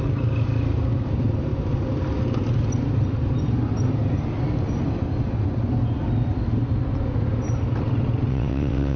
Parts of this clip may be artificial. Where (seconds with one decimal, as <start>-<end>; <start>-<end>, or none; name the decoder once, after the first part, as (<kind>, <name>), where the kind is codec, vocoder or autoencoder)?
8.3-9.0 (vocoder, WaveNeXt)